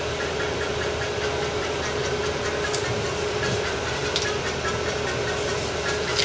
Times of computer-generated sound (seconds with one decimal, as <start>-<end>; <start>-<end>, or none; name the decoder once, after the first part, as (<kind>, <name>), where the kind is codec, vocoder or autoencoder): none